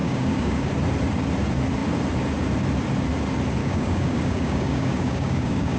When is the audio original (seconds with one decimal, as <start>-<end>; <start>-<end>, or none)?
0.7-3.6